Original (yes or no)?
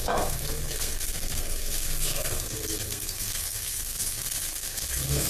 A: no